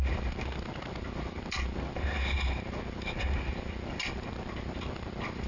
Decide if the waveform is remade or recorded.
recorded